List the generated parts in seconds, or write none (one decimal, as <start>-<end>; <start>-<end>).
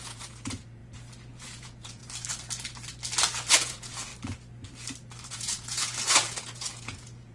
0.0-0.8; 1.3-2.0; 3.5-4.1; 5.3-7.3